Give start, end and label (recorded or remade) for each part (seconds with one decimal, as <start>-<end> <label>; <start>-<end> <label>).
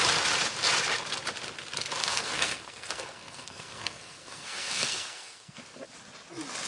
0.0-2.0 recorded; 2.0-5.6 remade; 5.6-6.7 recorded